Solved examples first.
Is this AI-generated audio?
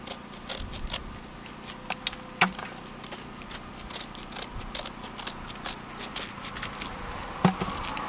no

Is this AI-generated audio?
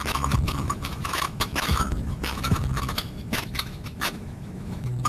yes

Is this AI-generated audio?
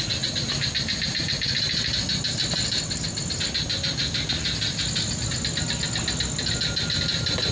no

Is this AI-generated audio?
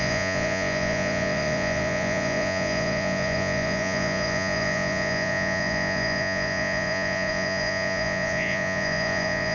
yes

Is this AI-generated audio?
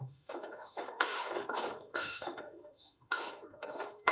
yes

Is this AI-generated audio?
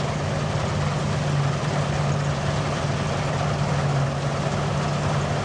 no